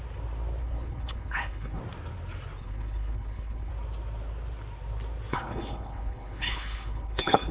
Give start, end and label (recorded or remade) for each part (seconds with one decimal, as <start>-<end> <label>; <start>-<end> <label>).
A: 0.0-0.6 recorded; 0.6-1.8 remade; 1.8-2.6 recorded; 2.6-3.7 remade; 3.7-5.3 recorded; 5.3-7.5 remade